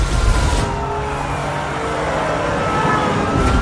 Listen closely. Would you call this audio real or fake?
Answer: real